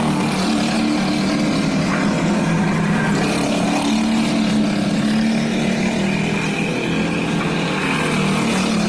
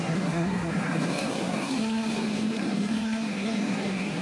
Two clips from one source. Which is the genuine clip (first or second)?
first